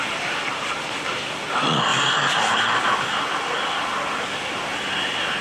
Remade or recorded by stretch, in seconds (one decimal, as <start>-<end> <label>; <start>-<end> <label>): 0.0-5.4 recorded